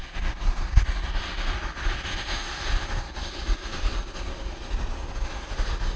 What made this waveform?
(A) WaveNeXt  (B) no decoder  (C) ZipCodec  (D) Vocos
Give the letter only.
B